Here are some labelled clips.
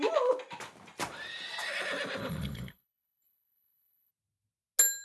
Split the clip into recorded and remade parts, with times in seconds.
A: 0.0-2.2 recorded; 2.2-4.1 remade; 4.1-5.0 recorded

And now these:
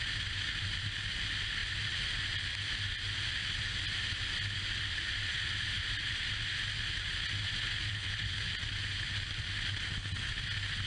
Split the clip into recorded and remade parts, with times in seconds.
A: 0.0-7.9 recorded; 7.9-8.5 remade; 8.5-10.9 recorded

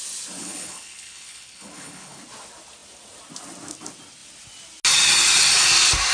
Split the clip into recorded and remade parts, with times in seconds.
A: 0.0-0.4 recorded; 0.4-2.2 remade; 2.2-6.1 recorded

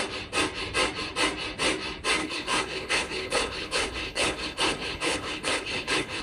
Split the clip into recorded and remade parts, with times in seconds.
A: 0.0-2.2 recorded; 2.2-6.2 remade

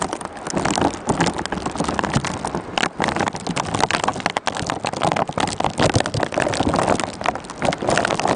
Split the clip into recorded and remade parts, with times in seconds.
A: 0.0-8.4 recorded

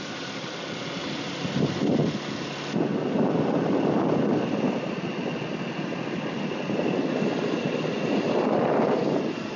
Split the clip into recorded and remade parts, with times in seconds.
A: 0.0-9.6 recorded